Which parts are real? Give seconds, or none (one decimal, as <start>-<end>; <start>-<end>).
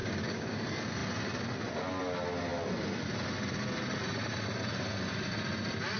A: 0.6-6.0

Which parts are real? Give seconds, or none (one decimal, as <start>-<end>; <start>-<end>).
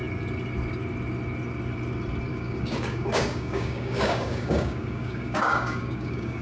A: 0.0-2.3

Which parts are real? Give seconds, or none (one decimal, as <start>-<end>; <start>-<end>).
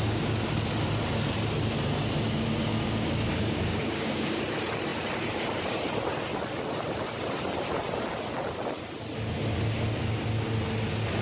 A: 0.0-2.7; 4.4-11.2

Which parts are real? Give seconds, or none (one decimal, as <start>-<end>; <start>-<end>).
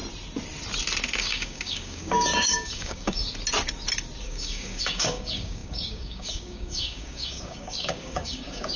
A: 0.0-1.2; 3.2-4.2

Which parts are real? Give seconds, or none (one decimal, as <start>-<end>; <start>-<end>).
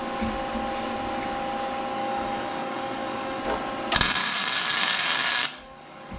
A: 0.0-1.9; 3.4-4.2